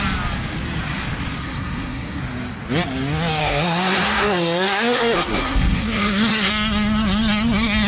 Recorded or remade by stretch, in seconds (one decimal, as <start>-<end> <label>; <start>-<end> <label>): 0.0-1.4 recorded; 1.4-2.2 remade; 2.2-3.4 recorded; 3.4-6.5 remade; 6.5-7.9 recorded